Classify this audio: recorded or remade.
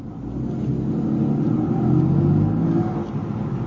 recorded